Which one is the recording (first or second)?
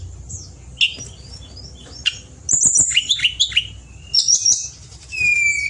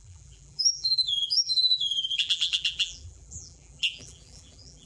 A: first